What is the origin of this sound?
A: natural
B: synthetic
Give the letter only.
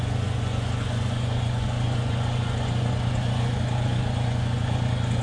B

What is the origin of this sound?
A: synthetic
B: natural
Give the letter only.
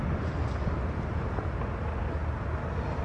B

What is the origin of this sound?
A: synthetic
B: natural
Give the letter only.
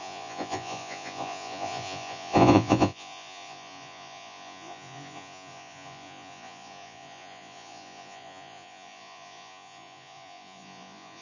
A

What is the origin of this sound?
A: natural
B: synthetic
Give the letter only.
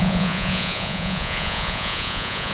B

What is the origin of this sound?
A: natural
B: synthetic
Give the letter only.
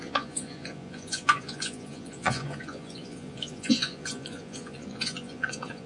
B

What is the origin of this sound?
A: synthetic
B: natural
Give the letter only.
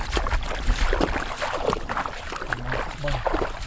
B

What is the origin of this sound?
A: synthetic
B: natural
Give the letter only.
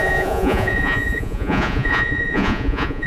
A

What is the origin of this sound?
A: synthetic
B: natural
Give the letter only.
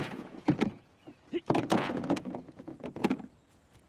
A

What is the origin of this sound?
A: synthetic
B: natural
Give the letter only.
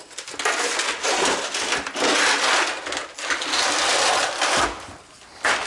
B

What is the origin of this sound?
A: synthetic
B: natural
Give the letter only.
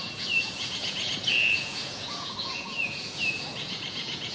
A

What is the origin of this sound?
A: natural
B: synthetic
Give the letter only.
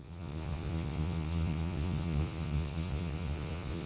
B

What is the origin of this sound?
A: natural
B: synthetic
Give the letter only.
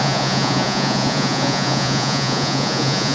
B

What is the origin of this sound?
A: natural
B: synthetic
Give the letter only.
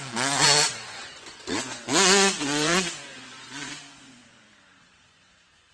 B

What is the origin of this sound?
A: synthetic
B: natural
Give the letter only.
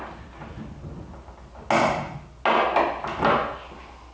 B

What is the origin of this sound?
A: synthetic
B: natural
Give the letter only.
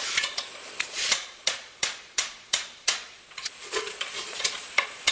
A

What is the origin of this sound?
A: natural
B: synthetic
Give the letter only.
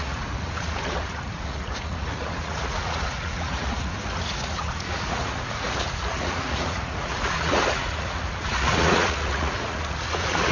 B